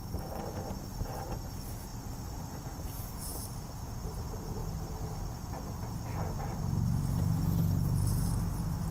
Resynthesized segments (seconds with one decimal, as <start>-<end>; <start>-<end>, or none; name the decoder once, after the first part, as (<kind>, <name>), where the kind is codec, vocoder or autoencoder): none